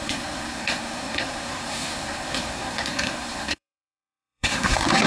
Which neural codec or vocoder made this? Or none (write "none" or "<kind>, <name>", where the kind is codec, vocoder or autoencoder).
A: codec, SNAC